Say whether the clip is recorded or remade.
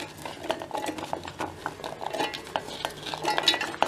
recorded